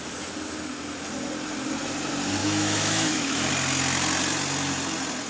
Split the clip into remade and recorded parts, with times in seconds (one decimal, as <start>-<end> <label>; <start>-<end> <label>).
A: 0.0-2.4 recorded; 2.4-3.5 remade; 3.5-5.3 recorded